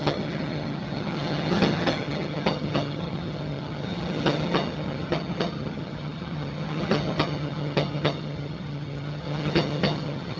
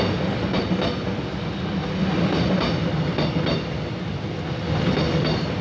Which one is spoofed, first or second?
first